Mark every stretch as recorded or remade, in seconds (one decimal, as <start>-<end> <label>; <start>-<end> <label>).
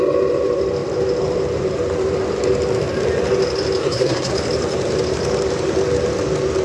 0.0-3.8 recorded; 3.8-4.3 remade; 4.3-6.6 recorded